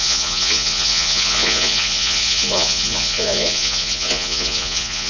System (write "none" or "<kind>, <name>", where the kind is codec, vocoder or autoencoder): vocoder, Vocos